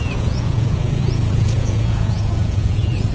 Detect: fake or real fake